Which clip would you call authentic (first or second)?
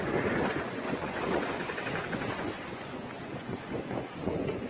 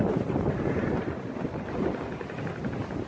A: second